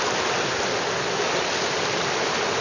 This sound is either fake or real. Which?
real